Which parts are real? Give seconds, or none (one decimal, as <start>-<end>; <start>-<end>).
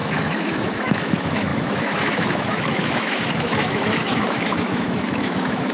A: none